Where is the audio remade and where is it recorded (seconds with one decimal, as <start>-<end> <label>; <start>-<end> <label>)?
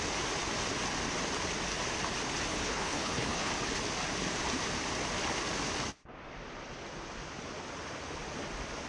0.0-2.5 recorded; 2.5-3.5 remade; 3.5-8.9 recorded